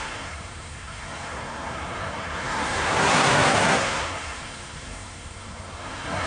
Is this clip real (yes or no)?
no